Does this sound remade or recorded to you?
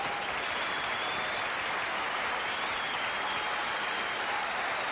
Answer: recorded